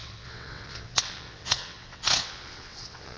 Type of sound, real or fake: fake